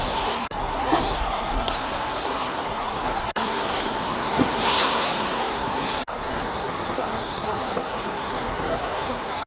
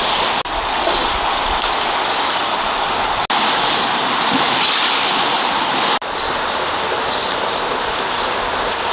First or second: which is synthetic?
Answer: first